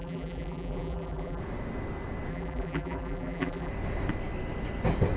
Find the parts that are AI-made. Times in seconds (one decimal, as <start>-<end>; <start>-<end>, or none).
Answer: 0.0-1.4; 2.3-3.7